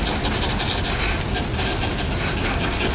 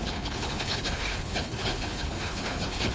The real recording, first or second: first